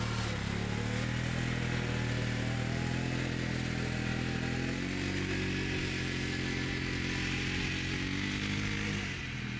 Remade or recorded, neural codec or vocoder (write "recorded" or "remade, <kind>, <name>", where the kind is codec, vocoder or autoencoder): recorded